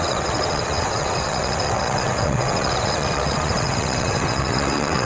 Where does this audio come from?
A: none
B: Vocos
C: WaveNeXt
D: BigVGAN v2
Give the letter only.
C